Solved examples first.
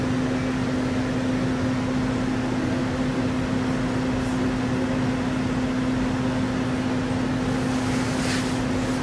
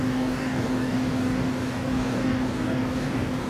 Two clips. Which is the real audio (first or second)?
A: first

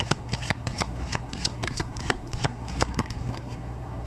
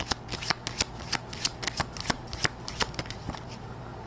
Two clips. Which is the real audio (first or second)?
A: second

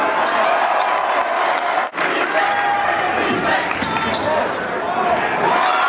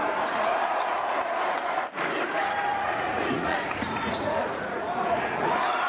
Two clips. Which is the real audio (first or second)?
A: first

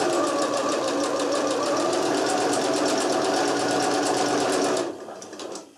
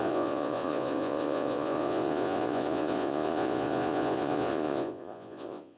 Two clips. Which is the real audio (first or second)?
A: first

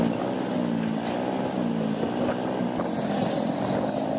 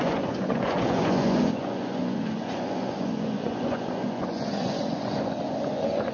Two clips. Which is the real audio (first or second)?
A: first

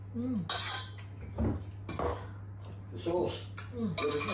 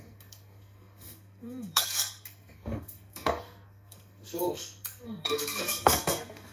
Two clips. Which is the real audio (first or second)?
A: first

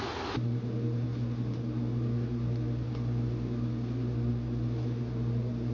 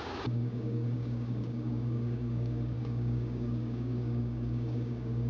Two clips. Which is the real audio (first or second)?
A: first